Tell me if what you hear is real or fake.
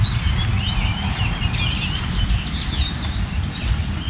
real